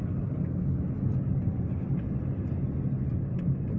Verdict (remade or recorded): recorded